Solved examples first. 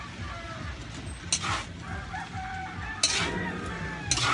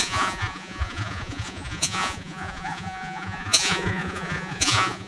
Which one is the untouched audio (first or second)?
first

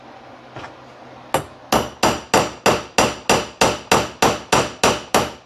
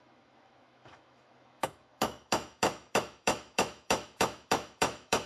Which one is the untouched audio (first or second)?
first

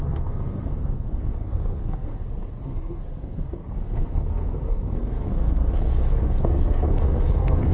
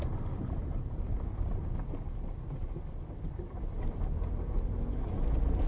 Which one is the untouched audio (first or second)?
second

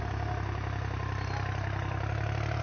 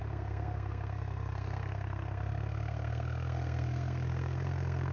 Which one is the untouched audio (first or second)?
first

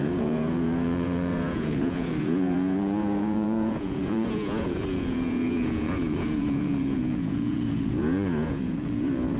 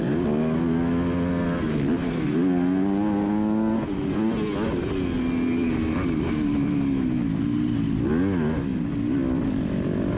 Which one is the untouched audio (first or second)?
second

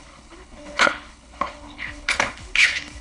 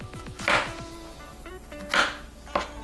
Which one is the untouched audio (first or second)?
second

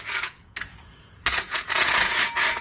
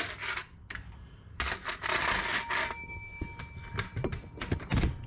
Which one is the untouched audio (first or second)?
second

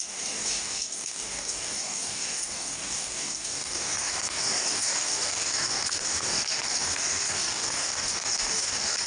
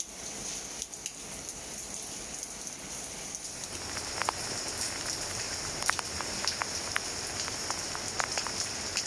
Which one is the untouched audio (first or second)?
second